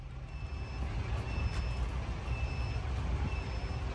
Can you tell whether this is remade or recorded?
recorded